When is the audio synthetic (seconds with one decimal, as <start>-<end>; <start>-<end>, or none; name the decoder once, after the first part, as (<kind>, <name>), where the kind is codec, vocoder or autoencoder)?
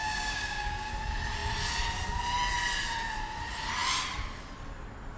0.0-0.9 (codec, DAC)